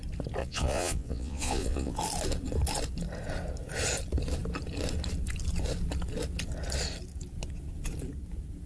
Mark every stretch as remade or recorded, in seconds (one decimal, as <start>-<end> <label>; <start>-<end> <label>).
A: 0.0-0.4 recorded; 0.4-1.9 remade; 1.9-8.7 recorded